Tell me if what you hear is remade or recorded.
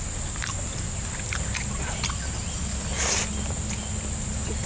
recorded